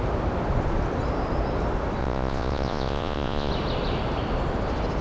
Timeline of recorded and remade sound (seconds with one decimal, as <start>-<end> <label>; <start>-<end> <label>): 0.0-2.0 recorded; 2.0-3.5 remade; 3.5-5.0 recorded